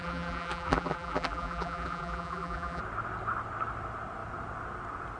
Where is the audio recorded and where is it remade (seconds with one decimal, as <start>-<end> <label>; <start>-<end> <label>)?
0.0-2.8 remade; 2.8-5.2 recorded